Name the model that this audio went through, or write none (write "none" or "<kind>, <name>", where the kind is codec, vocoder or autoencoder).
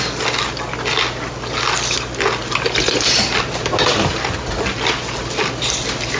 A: none